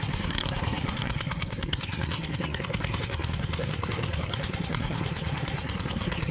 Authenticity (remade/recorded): remade